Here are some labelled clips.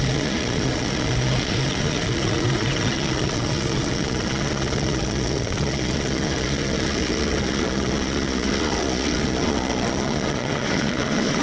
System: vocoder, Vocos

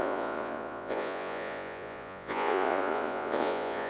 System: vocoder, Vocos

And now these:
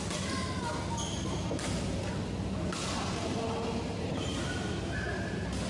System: none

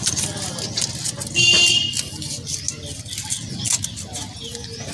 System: none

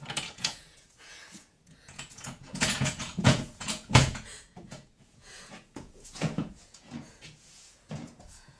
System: vocoder, Vocos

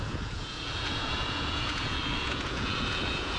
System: vocoder, Vocos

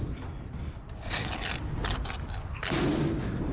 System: none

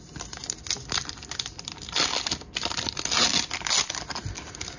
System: none